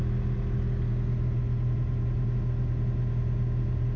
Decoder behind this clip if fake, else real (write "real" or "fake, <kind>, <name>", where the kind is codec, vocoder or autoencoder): real